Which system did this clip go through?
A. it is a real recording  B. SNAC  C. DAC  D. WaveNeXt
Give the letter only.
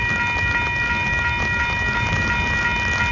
A